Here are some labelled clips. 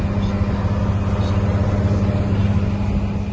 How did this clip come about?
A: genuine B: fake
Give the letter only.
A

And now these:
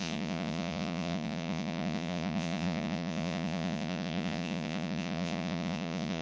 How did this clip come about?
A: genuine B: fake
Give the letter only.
B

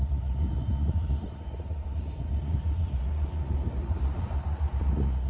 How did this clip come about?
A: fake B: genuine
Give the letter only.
A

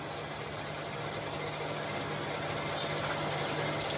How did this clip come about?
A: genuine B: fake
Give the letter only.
A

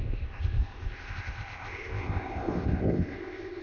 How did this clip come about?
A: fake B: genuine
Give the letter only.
A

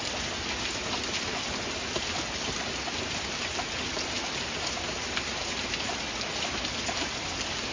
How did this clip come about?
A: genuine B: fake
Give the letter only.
A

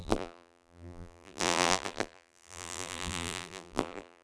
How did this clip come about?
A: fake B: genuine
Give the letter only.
A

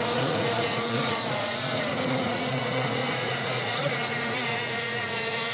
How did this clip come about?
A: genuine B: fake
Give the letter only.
B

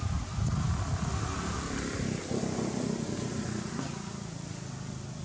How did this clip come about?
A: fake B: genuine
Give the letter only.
B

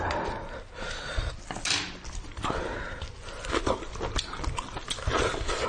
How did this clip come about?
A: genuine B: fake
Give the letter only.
A